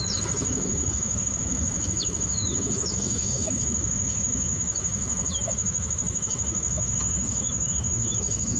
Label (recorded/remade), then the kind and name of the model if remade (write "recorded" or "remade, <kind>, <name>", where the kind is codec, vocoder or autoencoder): remade, autoencoder, DAC-VAE